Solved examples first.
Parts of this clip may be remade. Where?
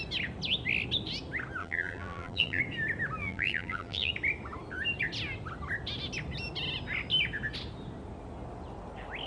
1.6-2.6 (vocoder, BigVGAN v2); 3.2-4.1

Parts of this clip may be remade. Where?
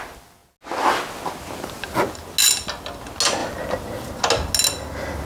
none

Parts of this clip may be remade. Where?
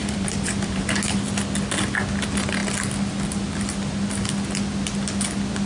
0.0-1.0 (vocoder, BigVGAN v2)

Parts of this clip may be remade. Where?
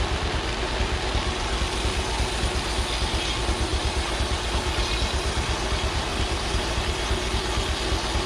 3.7-4.3 (vocoder, BigVGAN v2); 6.1-6.8